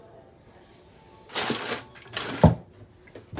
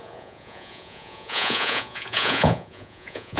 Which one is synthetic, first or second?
second